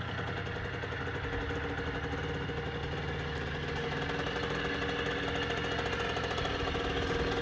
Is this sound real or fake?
real